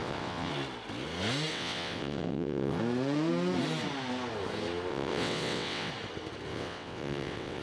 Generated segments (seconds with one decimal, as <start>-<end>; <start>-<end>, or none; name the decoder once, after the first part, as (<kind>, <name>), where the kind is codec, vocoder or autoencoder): 0.0-0.5 (vocoder, WaveNeXt); 1.5-2.8; 4.9-5.9; 6.5-7.6